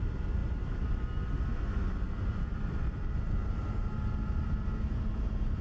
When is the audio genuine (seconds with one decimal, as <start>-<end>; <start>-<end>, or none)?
0.0-0.4; 1.0-1.5; 4.9-5.6